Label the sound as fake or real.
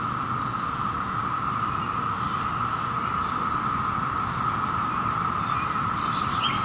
real